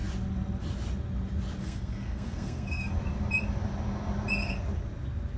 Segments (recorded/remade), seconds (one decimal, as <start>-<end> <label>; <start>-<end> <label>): 0.0-1.6 recorded; 1.6-2.9 remade; 2.9-5.4 recorded